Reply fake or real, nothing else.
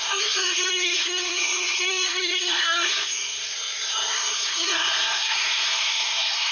fake